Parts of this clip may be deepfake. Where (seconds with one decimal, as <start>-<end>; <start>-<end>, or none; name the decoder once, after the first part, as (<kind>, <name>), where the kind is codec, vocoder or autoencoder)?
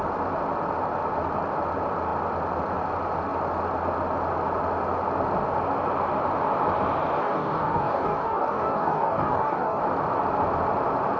7.2-9.8 (codec, DAC)